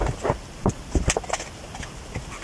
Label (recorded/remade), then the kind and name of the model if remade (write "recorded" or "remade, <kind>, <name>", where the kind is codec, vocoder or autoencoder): recorded